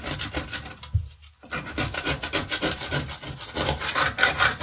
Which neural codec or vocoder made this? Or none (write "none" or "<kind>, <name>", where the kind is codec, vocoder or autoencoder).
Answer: none